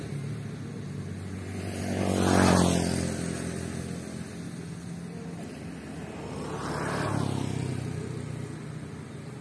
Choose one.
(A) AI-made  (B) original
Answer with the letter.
B